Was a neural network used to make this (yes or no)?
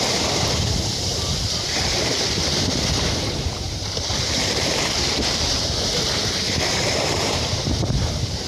yes